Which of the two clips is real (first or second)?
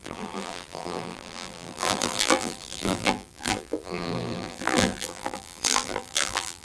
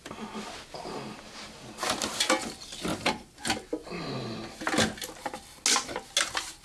second